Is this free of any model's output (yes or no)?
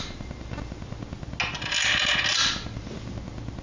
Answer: yes